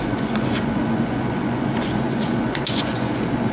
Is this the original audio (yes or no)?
no